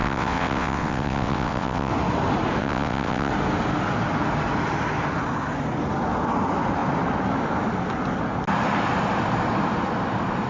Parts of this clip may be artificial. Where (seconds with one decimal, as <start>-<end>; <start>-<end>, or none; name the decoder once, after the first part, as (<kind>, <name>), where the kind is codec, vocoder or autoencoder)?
0.0-1.9 (vocoder, WaveNeXt); 2.6-3.3